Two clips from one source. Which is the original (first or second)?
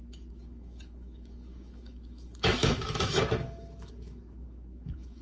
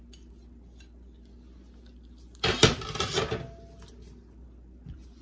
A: second